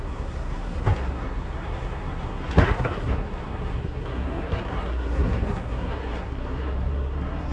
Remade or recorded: remade